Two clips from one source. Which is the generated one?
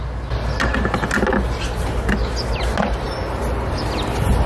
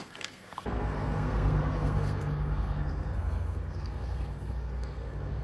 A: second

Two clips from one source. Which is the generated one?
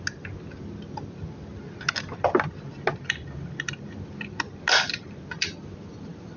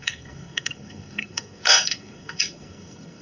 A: second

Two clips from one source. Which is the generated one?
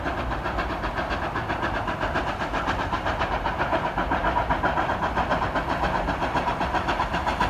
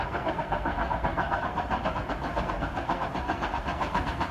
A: second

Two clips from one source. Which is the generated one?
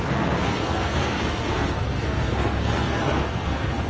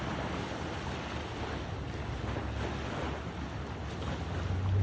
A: first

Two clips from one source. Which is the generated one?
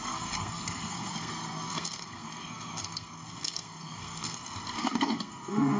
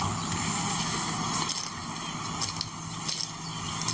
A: first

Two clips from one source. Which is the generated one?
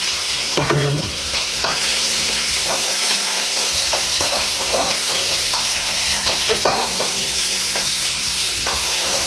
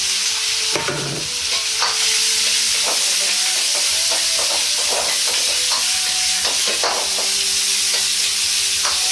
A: first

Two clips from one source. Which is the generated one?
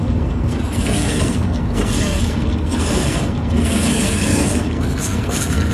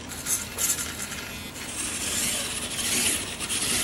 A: first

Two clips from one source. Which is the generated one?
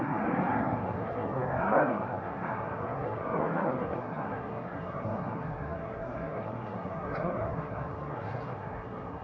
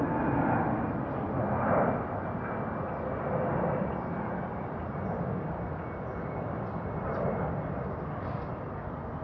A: first